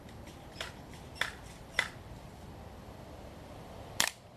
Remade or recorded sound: remade